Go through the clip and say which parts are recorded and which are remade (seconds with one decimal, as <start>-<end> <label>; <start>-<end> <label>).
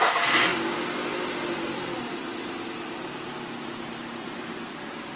0.0-0.5 remade; 0.5-3.6 recorded; 3.6-5.2 remade